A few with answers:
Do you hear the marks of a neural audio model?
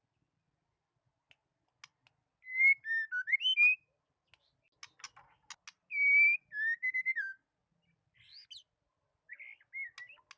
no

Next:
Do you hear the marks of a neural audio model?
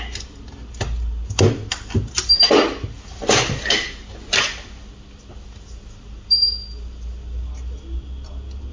no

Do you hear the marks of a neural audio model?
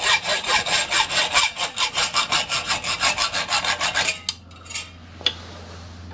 no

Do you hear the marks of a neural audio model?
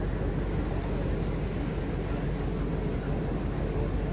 no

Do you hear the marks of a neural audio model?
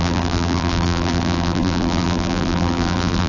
yes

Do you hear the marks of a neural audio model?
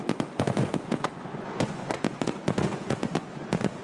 yes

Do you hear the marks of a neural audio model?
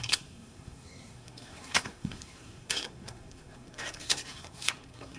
yes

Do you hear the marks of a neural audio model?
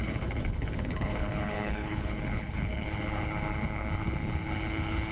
yes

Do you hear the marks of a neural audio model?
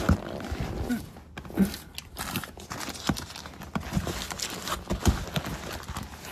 no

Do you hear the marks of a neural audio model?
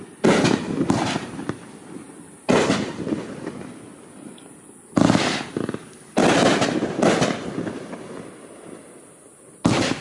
no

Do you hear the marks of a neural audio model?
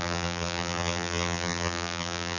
yes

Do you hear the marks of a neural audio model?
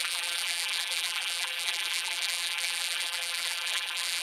yes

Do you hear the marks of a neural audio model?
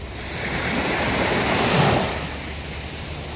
no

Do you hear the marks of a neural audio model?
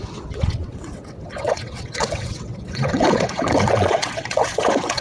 yes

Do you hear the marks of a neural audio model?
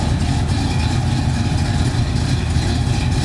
no